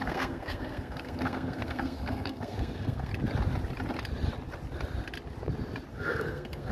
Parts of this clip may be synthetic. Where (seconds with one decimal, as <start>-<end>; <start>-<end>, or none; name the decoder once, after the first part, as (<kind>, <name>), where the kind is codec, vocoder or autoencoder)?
0.0-3.1 (codec, SNAC); 5.9-6.7